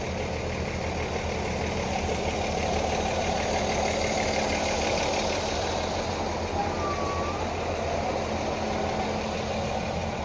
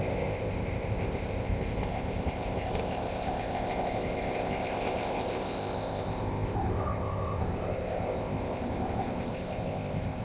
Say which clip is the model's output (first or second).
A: second